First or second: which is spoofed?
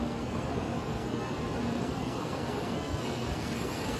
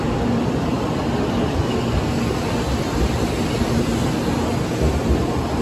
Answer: first